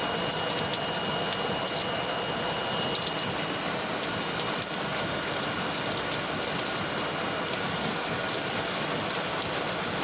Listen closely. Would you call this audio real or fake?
real